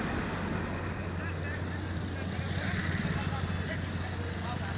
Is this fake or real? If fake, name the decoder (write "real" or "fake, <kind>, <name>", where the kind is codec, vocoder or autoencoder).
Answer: real